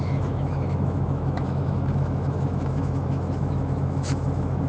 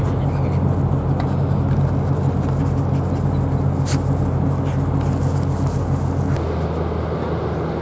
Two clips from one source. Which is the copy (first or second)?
first